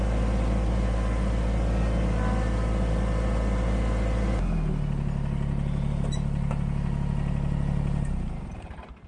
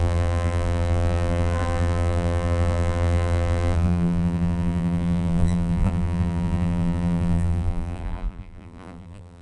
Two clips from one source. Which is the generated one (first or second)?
second